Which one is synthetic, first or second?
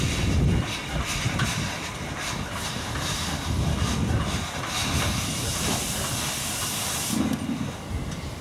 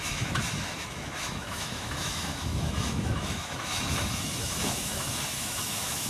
second